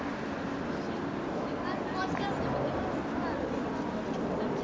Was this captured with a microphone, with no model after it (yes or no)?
yes